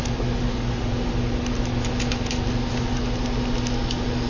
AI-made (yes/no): no